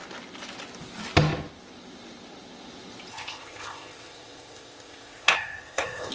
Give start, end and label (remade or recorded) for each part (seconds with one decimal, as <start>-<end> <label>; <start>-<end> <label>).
0.0-3.1 recorded; 3.1-6.1 remade

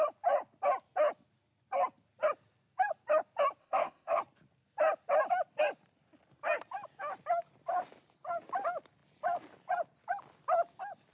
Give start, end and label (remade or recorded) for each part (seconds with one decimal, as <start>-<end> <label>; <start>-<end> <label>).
0.0-3.6 recorded; 3.6-4.2 remade; 4.2-11.1 recorded

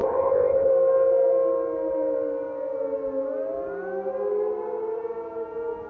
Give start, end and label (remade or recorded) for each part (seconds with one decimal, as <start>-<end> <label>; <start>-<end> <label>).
0.0-0.7 remade; 0.7-5.9 recorded

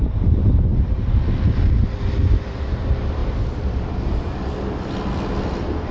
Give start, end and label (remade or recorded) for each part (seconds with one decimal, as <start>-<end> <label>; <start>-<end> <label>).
0.0-5.9 recorded

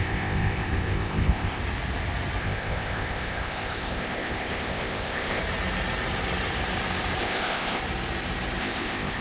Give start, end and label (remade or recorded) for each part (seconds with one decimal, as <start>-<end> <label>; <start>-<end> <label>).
0.0-1.6 remade; 1.6-2.4 recorded; 2.4-5.4 remade; 5.4-7.2 recorded; 7.2-7.8 remade; 7.8-8.6 recorded; 8.6-9.2 remade

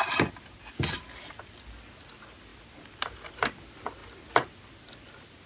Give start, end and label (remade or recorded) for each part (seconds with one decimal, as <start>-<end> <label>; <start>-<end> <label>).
0.0-5.5 recorded

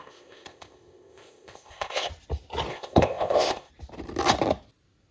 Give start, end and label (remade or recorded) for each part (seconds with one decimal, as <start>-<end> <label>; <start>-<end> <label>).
0.0-2.1 remade; 2.1-2.7 recorded; 2.7-3.7 remade; 3.7-5.1 recorded